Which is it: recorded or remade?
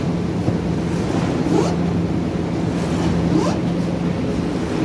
recorded